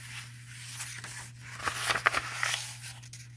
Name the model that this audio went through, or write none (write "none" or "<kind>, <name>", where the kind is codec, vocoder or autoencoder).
none